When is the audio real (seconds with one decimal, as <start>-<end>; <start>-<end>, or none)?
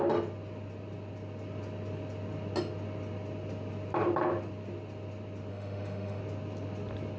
0.0-5.5; 6.2-7.2